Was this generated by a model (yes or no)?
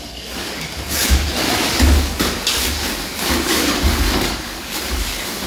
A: yes